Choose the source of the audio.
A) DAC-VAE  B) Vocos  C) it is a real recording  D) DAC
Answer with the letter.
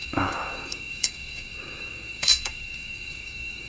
D